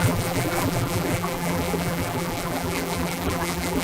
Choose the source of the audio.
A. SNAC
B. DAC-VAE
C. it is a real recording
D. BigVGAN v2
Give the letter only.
D